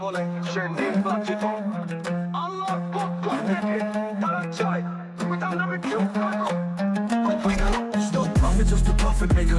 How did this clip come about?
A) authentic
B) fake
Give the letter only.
A